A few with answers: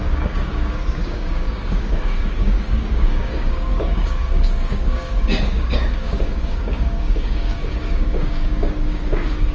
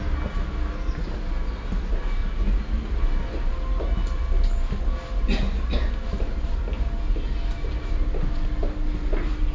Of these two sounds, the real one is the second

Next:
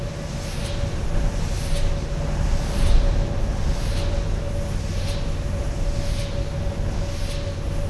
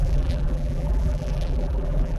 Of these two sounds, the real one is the first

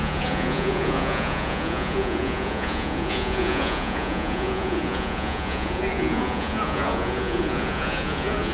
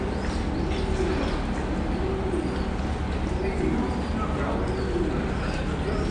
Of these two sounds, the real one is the second